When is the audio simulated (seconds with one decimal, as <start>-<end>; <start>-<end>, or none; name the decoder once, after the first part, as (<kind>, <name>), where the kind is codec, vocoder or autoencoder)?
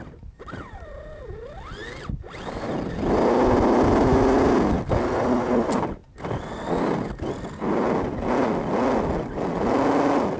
none